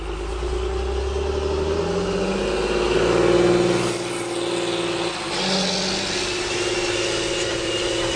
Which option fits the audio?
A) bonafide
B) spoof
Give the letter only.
A